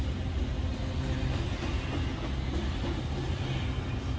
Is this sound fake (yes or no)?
no